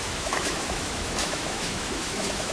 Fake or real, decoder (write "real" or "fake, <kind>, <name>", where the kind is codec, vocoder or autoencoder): fake, autoencoder, DAC-VAE